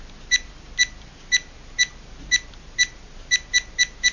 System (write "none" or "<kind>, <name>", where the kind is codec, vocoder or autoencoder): none